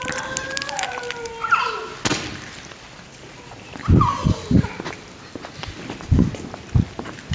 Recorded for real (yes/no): yes